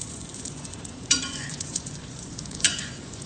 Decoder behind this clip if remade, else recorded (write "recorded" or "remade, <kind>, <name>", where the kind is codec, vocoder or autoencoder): remade, vocoder, Vocos